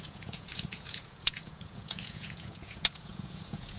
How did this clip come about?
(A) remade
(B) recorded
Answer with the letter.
A